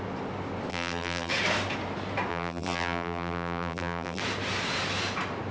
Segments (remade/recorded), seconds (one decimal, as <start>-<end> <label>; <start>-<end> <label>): 0.0-0.7 recorded; 0.7-1.3 remade; 1.3-2.3 recorded; 2.3-4.2 remade; 4.2-5.5 recorded